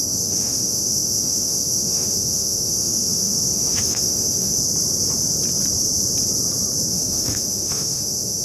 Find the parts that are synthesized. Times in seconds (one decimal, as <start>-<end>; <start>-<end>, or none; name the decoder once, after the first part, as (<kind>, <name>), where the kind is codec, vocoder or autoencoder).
0.0-4.6 (autoencoder, DAC-VAE); 6.9-8.4